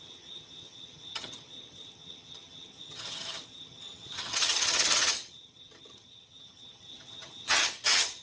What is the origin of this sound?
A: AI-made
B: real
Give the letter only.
A